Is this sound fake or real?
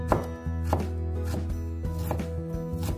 real